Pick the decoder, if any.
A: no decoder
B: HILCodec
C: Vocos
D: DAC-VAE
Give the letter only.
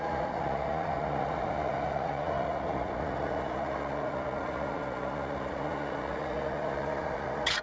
C